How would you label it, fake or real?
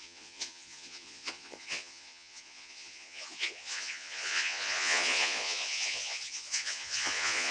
fake